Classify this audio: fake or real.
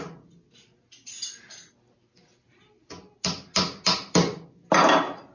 real